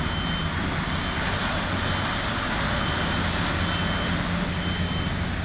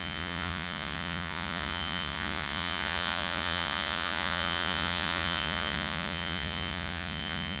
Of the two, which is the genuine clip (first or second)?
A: first